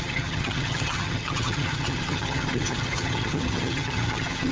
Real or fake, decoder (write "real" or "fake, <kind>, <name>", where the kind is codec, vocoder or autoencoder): fake, vocoder, HiFi-GAN